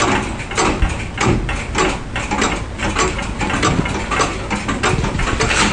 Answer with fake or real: real